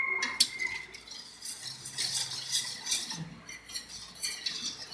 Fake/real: real